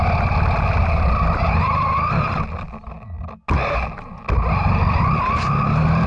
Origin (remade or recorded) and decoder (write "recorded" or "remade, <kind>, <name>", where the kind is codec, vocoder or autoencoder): recorded